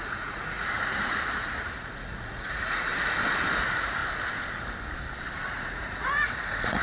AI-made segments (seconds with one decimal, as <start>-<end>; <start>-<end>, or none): 0.0-2.9; 3.6-4.0; 5.5-6.8